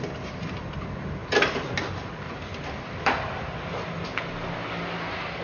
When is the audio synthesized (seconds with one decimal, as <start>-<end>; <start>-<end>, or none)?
none